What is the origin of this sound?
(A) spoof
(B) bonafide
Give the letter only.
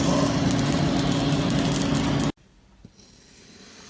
B